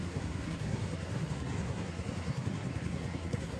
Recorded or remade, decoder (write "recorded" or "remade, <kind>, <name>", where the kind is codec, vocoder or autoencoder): remade, codec, SNAC